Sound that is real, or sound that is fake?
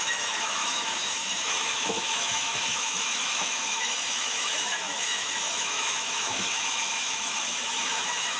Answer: fake